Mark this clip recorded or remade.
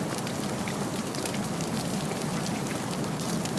remade